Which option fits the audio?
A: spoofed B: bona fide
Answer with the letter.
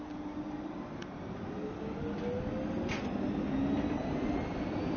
B